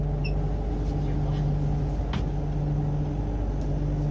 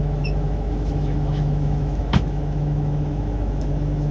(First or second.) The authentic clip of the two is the first